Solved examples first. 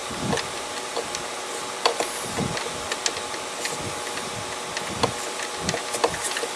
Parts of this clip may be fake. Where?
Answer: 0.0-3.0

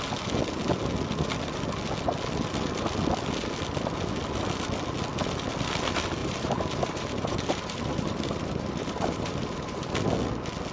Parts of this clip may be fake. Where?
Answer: 6.2-9.9

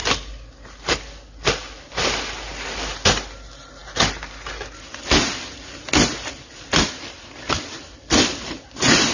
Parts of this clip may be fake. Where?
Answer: 0.0-3.8; 8.0-9.1

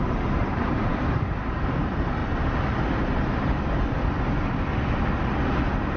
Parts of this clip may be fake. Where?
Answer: 0.0-2.2

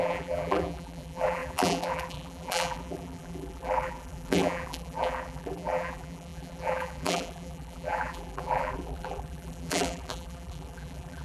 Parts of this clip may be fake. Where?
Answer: 0.0-11.2

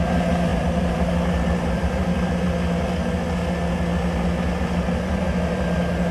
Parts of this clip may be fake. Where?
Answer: 0.5-2.3

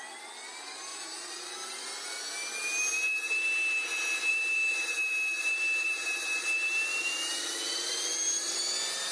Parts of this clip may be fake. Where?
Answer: 0.9-1.5; 4.3-8.1